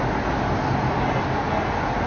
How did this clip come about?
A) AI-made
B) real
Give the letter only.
B